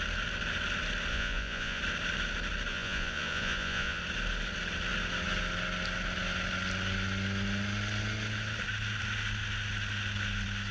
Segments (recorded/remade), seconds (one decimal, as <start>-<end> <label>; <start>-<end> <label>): 0.0-1.1 recorded; 1.1-1.8 remade; 1.8-2.7 recorded; 2.7-4.0 remade; 4.0-10.7 recorded